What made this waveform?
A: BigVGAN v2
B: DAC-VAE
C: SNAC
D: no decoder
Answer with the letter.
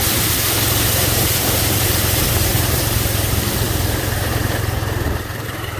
A